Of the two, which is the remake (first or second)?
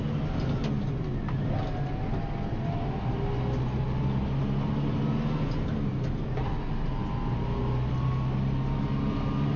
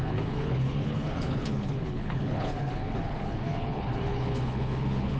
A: second